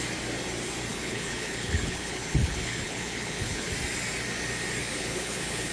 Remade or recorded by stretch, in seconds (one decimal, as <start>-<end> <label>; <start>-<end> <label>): 0.0-0.9 recorded; 0.9-3.7 remade; 3.7-4.8 recorded; 4.8-5.7 remade